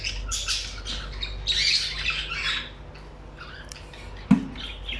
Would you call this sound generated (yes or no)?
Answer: no